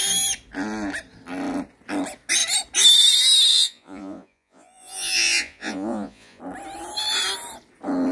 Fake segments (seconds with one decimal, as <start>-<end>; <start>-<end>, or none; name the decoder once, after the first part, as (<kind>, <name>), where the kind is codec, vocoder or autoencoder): 3.5-6.4 (vocoder, Vocos)